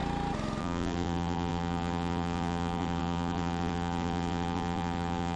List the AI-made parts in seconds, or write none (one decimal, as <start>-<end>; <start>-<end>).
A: 0.6-5.4